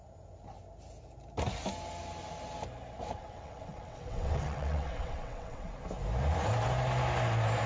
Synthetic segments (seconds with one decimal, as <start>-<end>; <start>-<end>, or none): 3.2-5.7